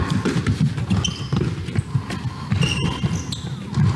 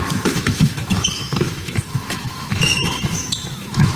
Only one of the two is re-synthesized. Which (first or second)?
second